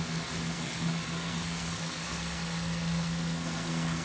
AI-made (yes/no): yes